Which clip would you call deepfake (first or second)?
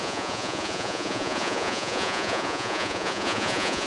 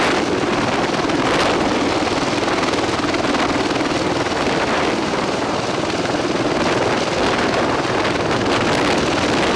first